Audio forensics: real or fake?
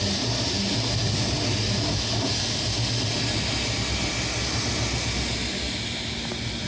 real